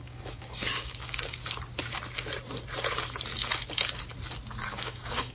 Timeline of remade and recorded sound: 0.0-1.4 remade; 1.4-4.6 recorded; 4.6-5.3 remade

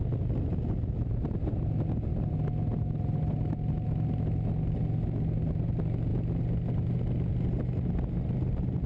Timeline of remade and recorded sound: 0.0-8.9 recorded